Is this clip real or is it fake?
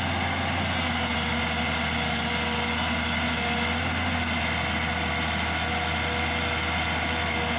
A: real